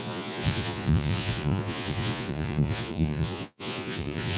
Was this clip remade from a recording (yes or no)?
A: yes